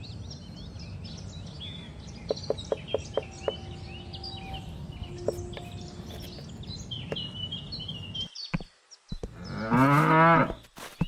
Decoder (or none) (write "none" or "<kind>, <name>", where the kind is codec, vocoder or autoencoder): none